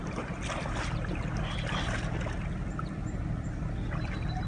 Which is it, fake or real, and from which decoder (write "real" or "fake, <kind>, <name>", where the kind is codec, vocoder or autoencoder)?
real